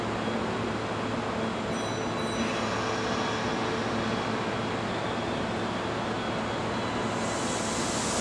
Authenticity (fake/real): real